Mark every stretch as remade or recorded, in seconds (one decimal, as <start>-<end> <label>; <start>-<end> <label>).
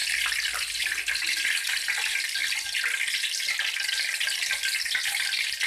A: 0.0-5.7 recorded